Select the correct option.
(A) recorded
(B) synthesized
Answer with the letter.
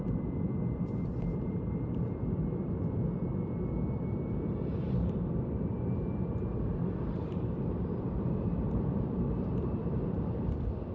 B